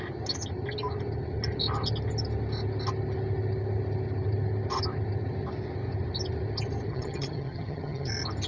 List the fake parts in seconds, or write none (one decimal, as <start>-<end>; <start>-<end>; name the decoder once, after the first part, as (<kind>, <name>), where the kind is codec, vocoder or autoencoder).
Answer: 6.9-8.1 (vocoder, HiFi-GAN)